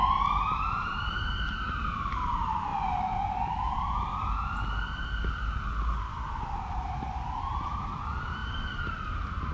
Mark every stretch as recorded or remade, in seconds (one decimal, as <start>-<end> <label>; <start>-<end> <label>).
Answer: 0.0-2.7 remade; 2.7-3.5 recorded; 3.5-4.1 remade; 4.1-7.3 recorded; 7.3-8.4 remade; 8.4-8.9 recorded; 8.9-9.5 remade